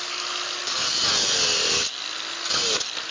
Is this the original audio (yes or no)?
yes